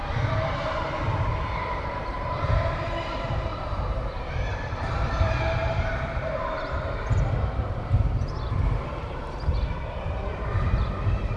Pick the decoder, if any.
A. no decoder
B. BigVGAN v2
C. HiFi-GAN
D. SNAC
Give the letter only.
B